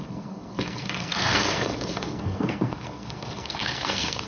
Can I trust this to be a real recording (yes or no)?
no